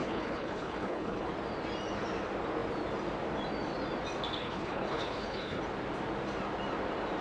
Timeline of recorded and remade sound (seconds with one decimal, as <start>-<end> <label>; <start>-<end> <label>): 0.0-1.3 remade; 1.3-4.4 recorded; 4.4-5.6 remade; 5.6-7.2 recorded